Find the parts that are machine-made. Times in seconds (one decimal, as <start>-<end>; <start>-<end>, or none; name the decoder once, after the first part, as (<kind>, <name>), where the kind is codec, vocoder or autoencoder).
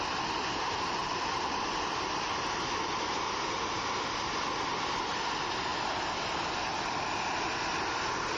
none